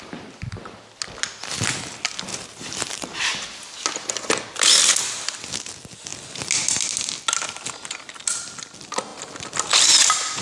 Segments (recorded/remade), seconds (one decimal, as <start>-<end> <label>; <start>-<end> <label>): 0.0-2.3 recorded; 2.3-3.2 remade; 3.2-10.4 recorded